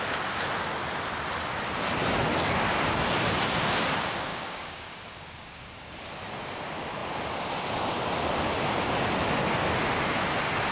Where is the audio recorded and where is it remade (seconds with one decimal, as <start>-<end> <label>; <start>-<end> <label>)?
0.0-4.3 recorded; 4.3-5.9 remade; 5.9-10.7 recorded